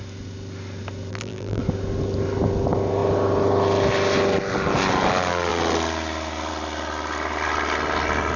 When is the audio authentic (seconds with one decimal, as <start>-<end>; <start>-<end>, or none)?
0.0-1.1; 1.6-8.4